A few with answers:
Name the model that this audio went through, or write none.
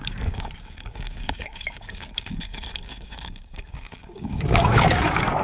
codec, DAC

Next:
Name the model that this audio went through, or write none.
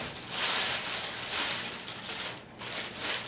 none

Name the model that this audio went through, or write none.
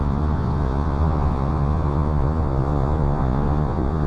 vocoder, Vocos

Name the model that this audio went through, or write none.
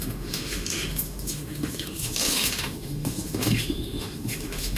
autoencoder, DAC-VAE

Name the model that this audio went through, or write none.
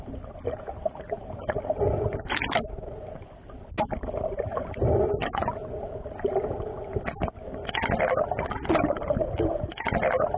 none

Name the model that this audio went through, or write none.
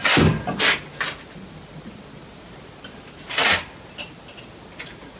none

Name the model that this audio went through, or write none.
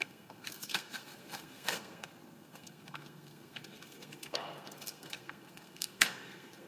codec, SNAC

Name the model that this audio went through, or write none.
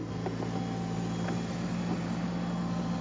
none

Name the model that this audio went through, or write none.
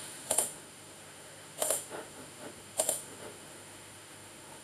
autoencoder, DAC-VAE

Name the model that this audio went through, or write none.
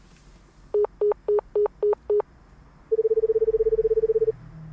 none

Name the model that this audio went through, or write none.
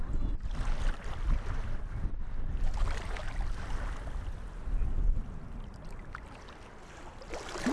none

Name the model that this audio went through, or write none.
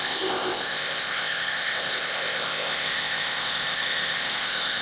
codec, ZipCodec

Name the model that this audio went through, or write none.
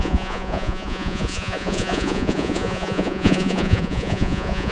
vocoder, Vocos